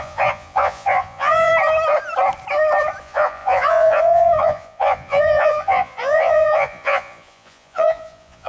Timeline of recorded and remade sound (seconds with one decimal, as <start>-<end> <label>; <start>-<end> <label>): 0.0-1.5 remade; 1.5-3.0 recorded; 3.0-8.5 remade